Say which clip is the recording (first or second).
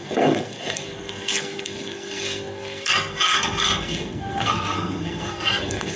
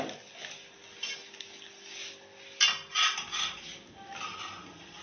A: second